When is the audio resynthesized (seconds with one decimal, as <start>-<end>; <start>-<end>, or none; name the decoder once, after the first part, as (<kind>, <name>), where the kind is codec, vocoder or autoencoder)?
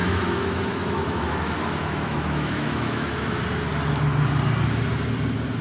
0.0-3.4 (autoencoder, DAC-VAE)